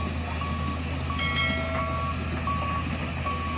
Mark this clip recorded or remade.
recorded